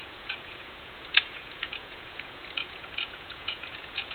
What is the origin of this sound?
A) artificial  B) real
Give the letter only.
A